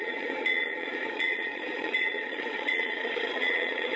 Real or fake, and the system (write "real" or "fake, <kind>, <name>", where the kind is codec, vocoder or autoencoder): fake, vocoder, Vocos